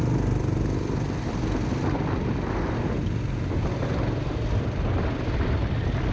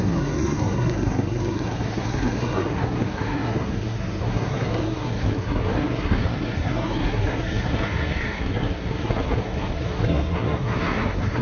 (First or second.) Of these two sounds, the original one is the first